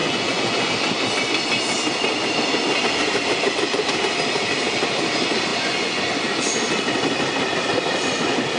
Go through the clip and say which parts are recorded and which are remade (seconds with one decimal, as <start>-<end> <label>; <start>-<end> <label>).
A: 0.0-0.7 remade; 0.7-5.5 recorded; 5.5-6.1 remade; 6.1-8.6 recorded